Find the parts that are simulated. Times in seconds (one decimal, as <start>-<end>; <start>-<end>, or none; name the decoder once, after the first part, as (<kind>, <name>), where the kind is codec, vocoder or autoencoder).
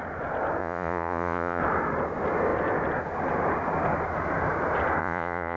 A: 0.6-1.6 (vocoder, Vocos); 5.0-5.6